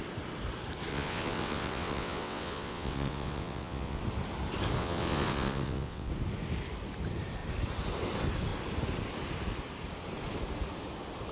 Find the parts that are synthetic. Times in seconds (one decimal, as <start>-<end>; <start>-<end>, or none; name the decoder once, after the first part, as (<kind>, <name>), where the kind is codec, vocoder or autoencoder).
0.9-4.0 (vocoder, WaveNeXt); 4.8-6.1